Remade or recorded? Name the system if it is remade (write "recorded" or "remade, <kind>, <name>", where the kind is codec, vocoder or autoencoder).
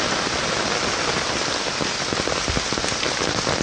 recorded